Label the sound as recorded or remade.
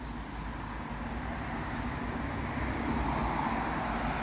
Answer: recorded